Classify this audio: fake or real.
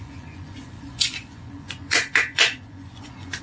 fake